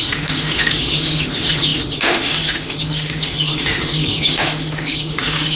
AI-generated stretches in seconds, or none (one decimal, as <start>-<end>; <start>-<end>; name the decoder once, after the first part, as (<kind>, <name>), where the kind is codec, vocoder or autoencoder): 0.0-5.6 (autoencoder, DAC-VAE)